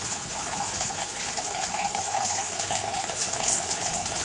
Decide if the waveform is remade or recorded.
remade